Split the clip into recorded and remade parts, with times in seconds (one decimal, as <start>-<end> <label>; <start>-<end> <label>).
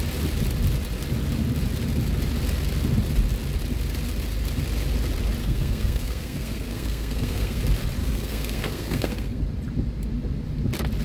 0.0-5.4 recorded; 5.4-7.6 remade; 7.6-8.0 recorded; 8.0-9.4 remade; 9.4-11.0 recorded